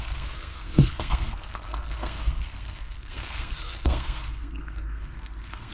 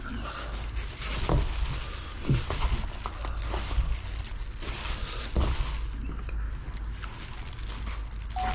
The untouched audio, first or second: second